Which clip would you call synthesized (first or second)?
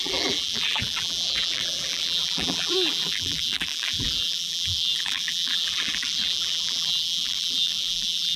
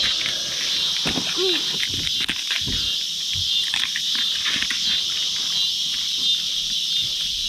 first